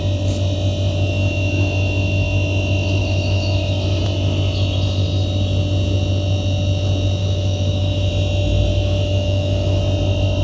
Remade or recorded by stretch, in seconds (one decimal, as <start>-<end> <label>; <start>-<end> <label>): 0.0-3.0 recorded; 3.0-4.0 remade; 4.0-7.2 recorded; 7.2-8.1 remade; 8.1-8.7 recorded; 8.7-9.8 remade; 9.8-10.4 recorded